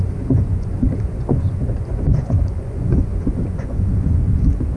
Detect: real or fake fake